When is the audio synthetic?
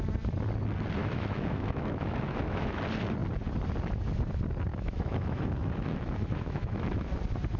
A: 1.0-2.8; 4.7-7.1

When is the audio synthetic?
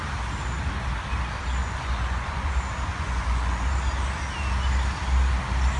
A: 1.6-2.5; 2.9-3.7